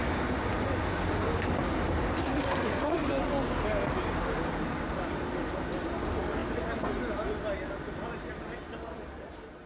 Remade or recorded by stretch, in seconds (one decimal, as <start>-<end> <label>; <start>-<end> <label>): 0.0-2.2 recorded; 2.2-3.0 remade; 3.0-9.7 recorded